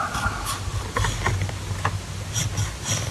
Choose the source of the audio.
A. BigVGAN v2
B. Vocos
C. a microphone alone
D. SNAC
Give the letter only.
C